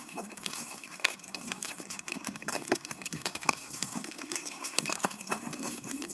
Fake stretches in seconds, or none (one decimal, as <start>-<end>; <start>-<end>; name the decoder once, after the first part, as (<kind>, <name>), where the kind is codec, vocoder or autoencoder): 0.0-6.1 (codec, SNAC)